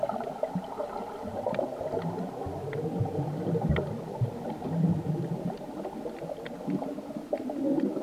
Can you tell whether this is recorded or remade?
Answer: recorded